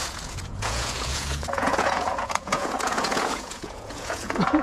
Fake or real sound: fake